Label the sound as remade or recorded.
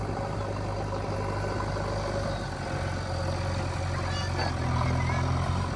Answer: recorded